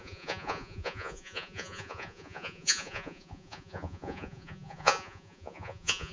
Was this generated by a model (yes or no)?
yes